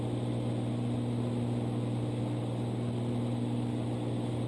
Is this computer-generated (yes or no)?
no